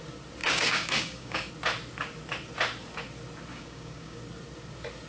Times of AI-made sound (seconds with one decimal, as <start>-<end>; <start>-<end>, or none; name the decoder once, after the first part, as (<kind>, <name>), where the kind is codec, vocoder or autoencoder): 0.4-1.5 (codec, DAC); 3.5-4.2